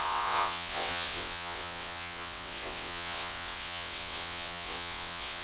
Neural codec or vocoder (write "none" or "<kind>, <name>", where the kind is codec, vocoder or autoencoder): vocoder, WaveNeXt